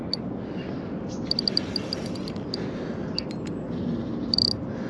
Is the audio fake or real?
real